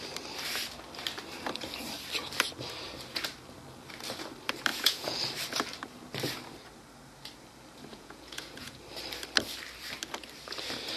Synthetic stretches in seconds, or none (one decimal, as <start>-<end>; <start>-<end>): 4.7-5.2; 7.9-8.8